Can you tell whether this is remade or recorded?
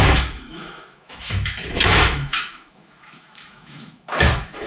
remade